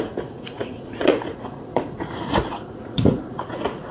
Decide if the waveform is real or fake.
fake